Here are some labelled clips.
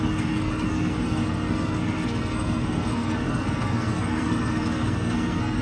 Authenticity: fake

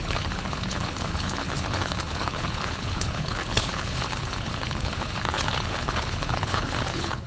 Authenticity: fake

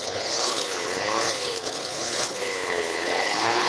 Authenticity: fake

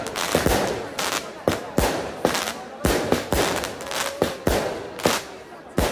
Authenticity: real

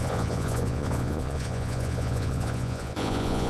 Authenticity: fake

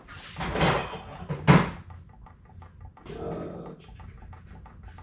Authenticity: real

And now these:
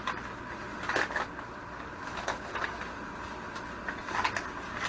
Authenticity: real